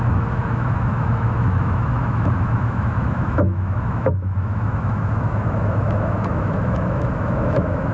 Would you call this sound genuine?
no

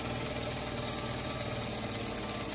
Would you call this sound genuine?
yes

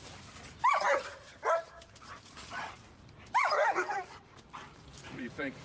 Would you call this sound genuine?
no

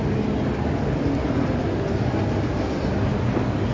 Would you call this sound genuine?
yes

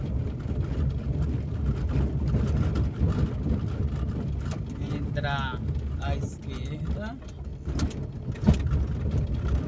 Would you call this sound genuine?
yes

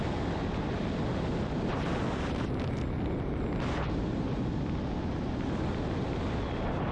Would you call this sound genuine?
yes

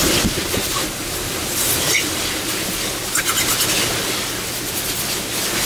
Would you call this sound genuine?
yes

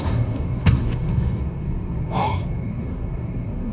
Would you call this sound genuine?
no